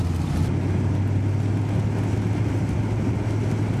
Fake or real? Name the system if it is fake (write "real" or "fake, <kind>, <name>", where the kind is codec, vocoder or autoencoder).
real